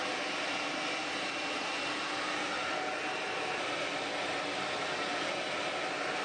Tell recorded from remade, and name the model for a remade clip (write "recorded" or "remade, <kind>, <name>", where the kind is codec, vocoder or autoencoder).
recorded